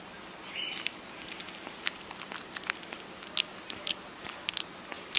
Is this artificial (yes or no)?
no